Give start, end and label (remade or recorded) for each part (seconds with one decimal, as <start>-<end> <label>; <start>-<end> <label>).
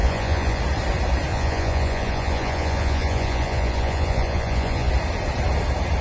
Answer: 0.0-0.6 remade; 0.6-1.3 recorded; 1.3-4.9 remade; 4.9-6.0 recorded